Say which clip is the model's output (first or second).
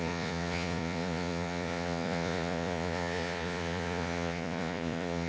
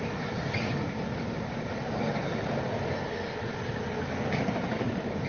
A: first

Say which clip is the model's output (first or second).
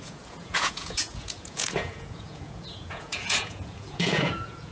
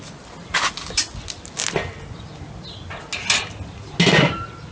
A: first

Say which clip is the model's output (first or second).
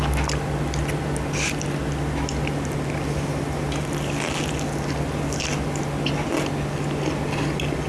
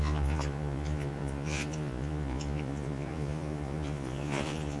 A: second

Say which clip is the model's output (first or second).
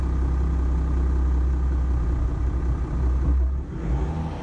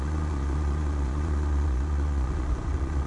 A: second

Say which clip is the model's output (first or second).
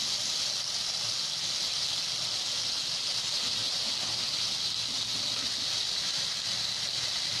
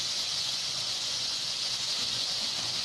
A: second